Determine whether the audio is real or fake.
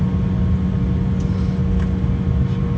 real